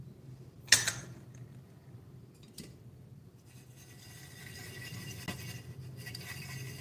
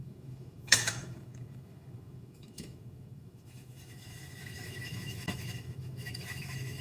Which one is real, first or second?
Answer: first